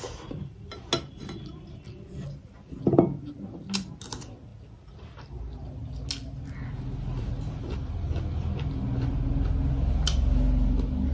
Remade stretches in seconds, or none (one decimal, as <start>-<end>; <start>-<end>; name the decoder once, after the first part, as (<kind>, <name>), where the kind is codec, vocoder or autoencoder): none